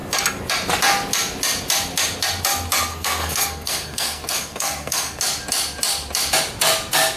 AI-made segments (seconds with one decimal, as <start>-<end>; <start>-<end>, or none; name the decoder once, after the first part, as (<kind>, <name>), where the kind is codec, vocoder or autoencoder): 2.9-5.2 (codec, SNAC)